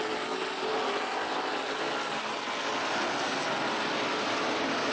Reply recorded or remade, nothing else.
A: recorded